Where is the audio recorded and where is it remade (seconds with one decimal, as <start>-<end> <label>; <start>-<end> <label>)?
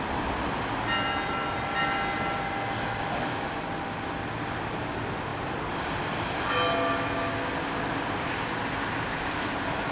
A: 0.0-9.9 recorded